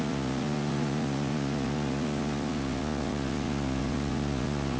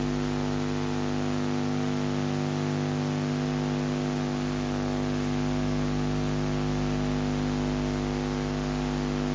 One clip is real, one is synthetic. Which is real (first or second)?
second